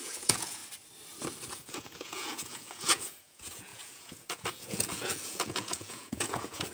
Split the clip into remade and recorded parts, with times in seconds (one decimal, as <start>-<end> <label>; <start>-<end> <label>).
0.0-0.6 remade; 0.6-1.5 recorded; 1.5-6.7 remade